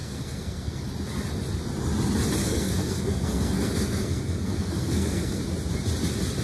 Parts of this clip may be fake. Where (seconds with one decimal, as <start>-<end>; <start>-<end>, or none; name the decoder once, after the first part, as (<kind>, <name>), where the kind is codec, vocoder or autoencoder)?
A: 0.0-0.8 (codec, SNAC); 2.4-5.4